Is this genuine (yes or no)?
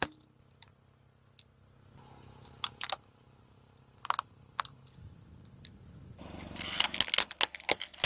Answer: yes